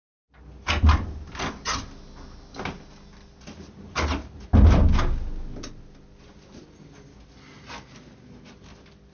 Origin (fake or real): real